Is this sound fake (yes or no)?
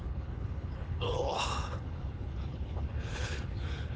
yes